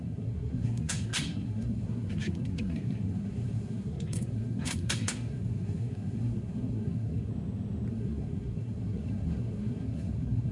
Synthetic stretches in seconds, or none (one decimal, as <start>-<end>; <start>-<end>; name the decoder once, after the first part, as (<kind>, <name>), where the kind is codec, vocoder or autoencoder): 0.0-7.3 (codec, SNAC); 7.9-10.5